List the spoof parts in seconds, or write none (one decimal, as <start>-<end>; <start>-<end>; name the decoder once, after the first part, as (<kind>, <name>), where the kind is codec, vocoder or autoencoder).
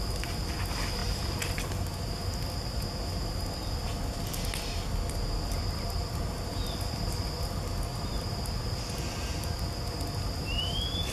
none